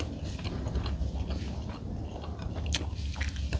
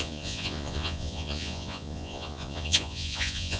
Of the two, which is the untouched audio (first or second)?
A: first